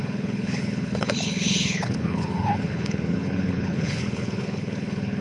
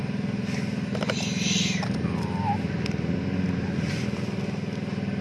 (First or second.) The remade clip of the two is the first